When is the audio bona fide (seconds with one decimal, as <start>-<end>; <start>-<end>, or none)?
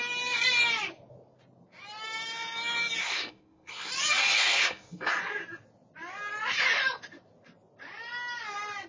0.0-3.0; 3.9-4.4; 5.1-8.9